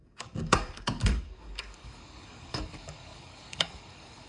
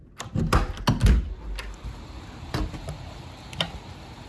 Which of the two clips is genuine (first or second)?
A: second